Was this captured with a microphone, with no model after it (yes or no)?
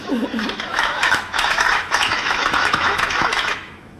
no